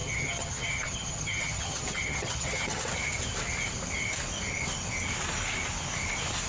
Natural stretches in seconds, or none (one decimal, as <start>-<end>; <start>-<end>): 2.8-6.5